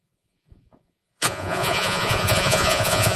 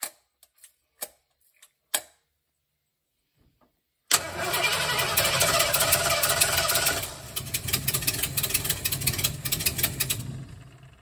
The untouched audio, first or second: second